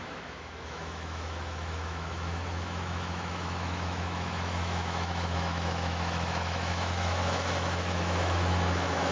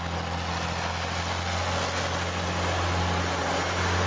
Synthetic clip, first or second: first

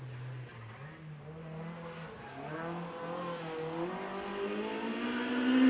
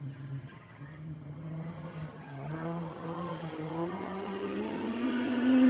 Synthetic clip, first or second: second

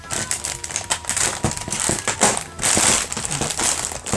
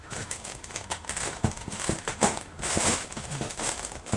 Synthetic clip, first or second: second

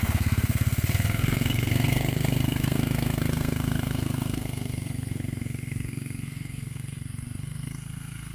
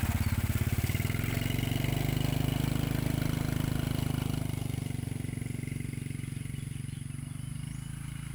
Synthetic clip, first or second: first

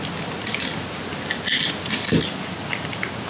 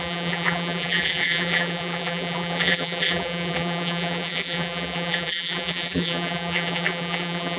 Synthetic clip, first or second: second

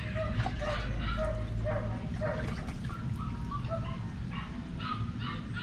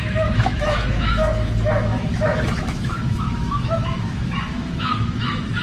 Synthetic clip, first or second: second